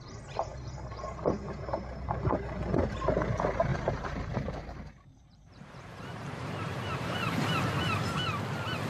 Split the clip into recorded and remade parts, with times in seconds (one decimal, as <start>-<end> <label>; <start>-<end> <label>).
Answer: 0.0-3.7 recorded; 3.7-7.5 remade; 7.5-8.9 recorded